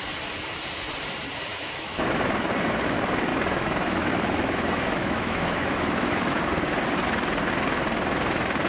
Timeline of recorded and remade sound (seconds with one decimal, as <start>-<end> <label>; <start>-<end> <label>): 0.0-1.5 recorded; 1.5-2.1 remade; 2.1-3.3 recorded; 3.3-6.4 remade; 6.4-8.7 recorded